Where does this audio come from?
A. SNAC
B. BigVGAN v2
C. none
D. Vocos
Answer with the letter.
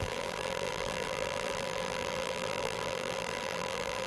B